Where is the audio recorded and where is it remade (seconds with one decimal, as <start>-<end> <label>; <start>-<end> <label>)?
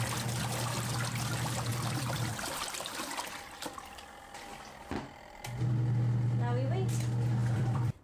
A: 0.0-1.7 recorded; 1.7-5.7 remade; 5.7-7.4 recorded; 7.4-8.0 remade